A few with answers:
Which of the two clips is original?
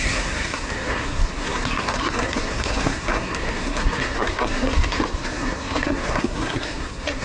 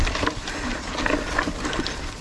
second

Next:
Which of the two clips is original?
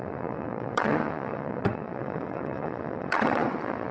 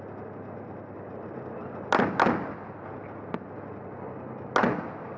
second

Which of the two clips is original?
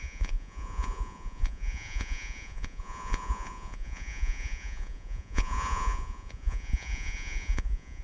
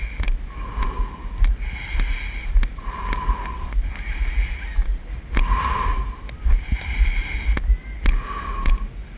second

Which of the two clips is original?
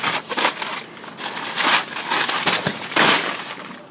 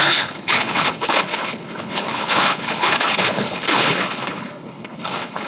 first